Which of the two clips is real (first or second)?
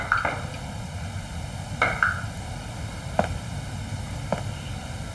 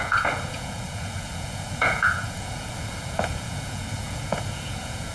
first